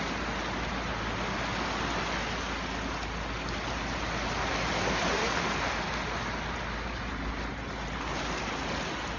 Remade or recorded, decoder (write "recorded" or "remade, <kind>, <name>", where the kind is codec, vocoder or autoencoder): recorded